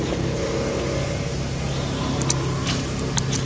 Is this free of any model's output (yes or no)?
yes